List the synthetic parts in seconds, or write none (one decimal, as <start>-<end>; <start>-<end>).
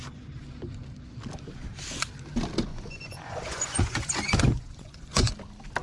2.7-5.3